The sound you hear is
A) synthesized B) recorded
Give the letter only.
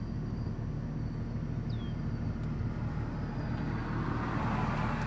B